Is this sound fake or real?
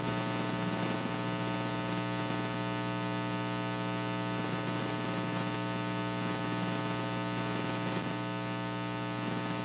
real